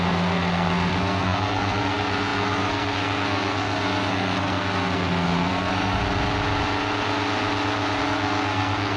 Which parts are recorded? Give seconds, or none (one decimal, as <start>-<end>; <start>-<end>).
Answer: 6.0-8.0